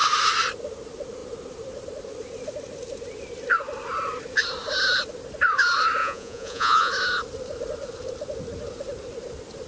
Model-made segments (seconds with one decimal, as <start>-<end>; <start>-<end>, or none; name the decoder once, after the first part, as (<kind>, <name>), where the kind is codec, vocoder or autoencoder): 6.0-6.9 (vocoder, Vocos)